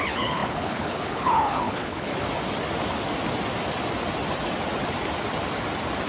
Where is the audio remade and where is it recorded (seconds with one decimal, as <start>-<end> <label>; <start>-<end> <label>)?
0.0-2.1 remade; 2.1-6.1 recorded